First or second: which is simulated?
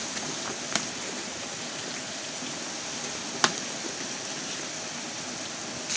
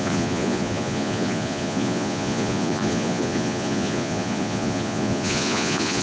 second